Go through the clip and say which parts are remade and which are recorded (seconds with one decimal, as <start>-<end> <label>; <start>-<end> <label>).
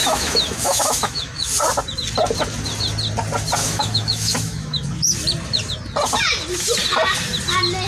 0.0-1.5 remade; 1.5-3.6 recorded; 3.6-4.9 remade; 4.9-7.9 recorded